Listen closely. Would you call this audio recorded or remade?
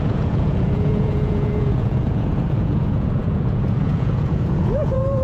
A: remade